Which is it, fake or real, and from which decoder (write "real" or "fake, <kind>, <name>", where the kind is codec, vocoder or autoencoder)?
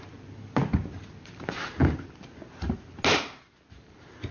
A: real